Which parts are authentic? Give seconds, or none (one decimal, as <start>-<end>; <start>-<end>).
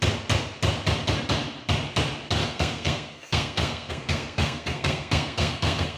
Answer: 0.0-2.4